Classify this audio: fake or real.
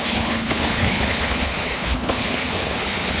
fake